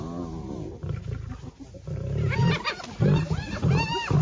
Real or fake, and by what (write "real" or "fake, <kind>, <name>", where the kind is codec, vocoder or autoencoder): real